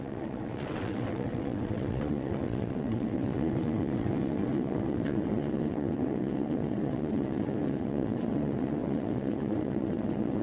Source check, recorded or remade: remade